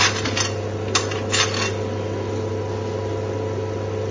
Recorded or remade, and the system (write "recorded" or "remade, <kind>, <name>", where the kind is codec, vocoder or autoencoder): recorded